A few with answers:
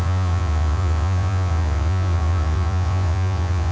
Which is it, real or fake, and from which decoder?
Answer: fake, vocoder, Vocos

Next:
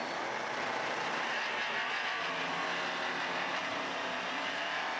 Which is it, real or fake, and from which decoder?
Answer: real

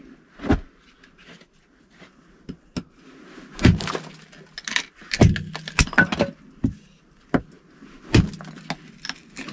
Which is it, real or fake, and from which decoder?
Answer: real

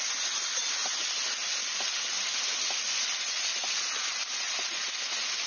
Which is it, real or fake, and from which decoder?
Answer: real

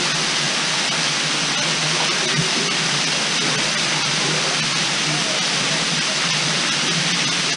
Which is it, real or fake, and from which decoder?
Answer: real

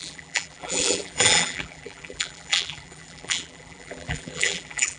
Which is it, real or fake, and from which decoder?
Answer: fake, vocoder, BigVGAN v2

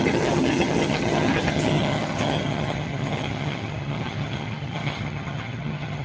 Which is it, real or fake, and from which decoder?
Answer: fake, vocoder, HiFi-GAN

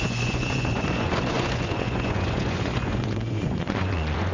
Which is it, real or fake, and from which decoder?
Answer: fake, vocoder, Vocos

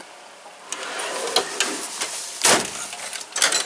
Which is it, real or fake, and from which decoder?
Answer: real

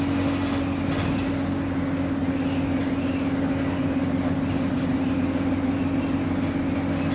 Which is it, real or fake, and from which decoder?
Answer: real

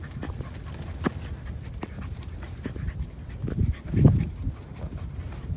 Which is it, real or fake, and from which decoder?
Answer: real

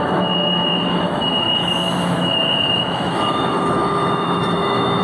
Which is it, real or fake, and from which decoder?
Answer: fake, autoencoder, DAC-VAE